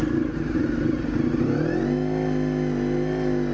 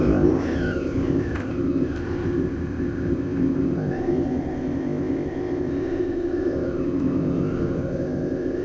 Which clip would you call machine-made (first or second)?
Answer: second